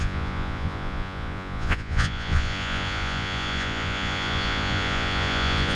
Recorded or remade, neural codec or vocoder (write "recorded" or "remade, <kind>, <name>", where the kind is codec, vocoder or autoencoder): remade, vocoder, Vocos